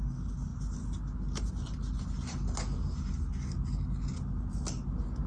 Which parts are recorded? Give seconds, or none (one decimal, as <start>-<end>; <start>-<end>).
0.0-5.3